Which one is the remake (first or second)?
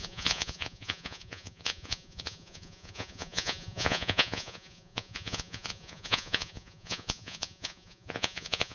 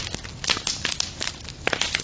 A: first